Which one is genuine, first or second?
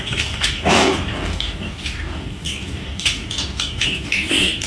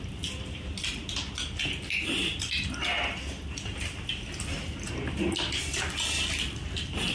second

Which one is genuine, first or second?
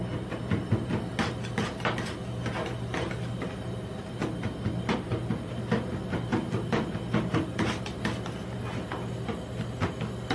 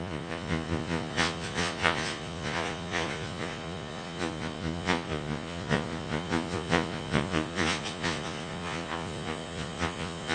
first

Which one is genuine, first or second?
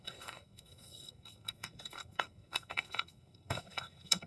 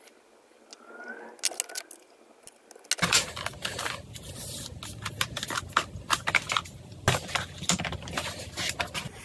second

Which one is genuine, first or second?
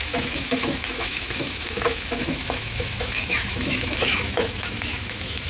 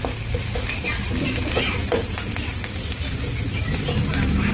second